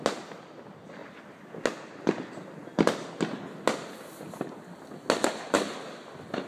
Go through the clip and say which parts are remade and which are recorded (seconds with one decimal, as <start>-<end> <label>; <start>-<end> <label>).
0.0-6.5 recorded